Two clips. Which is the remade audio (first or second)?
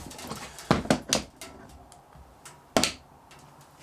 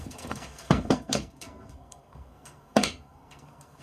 second